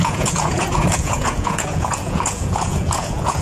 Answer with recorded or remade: remade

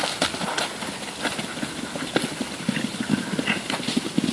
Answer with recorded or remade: recorded